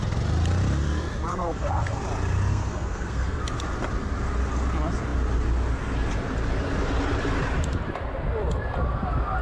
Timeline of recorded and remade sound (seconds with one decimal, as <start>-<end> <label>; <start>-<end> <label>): 0.0-1.3 recorded; 1.3-2.0 remade; 2.0-2.5 recorded; 2.5-3.4 remade; 3.4-9.4 recorded